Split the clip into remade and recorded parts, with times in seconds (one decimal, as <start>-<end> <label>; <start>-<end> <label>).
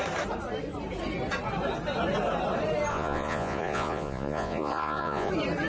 0.0-2.9 recorded; 2.9-5.3 remade; 5.3-5.7 recorded